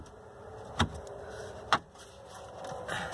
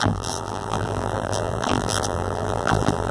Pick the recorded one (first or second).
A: first